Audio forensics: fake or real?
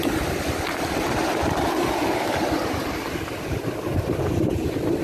real